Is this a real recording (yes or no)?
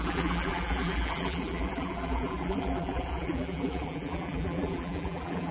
no